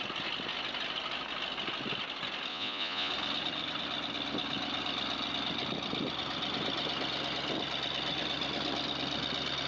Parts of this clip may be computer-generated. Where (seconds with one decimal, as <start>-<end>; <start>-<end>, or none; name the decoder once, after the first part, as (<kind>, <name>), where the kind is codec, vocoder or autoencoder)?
2.5-3.1 (vocoder, Vocos)